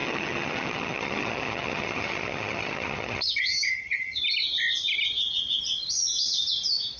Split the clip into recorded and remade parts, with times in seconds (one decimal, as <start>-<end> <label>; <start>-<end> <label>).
0.0-4.2 remade; 4.2-7.0 recorded